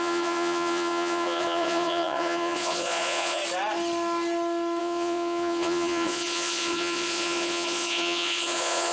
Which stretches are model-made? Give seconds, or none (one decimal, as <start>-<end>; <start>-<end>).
0.0-3.4; 4.8-8.9